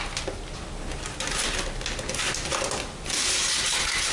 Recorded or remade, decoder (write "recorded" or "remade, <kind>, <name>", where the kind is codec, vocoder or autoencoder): recorded